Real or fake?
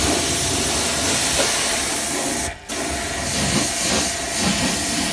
real